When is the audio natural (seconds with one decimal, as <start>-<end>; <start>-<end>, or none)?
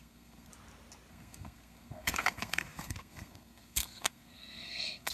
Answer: 0.5-1.1